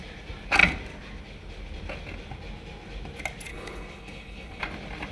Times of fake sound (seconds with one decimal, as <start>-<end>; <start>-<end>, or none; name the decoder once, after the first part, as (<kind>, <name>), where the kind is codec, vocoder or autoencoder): 3.5-4.6 (codec, HILCodec)